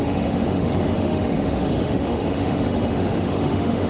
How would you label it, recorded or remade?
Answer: remade